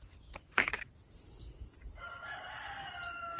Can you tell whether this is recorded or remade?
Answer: recorded